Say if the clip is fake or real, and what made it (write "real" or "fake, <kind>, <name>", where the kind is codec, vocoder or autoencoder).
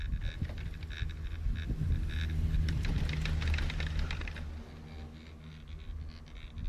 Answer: real